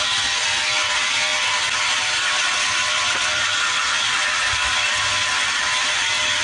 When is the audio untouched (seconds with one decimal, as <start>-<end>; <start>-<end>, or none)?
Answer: 0.0-6.4